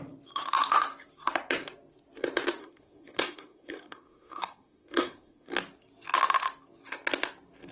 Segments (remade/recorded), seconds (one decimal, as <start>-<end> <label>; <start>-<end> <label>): 0.0-2.6 recorded; 2.6-5.5 remade; 5.5-7.7 recorded